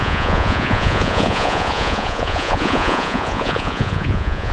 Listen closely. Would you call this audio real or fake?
fake